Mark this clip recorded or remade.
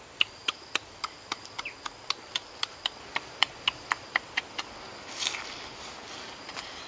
recorded